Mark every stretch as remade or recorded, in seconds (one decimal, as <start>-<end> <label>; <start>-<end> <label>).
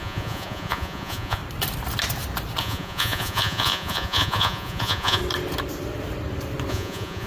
0.0-1.4 remade; 1.4-2.6 recorded; 2.6-5.2 remade; 5.2-6.7 recorded; 6.7-7.3 remade